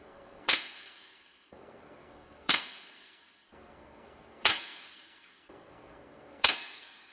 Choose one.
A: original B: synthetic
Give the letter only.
B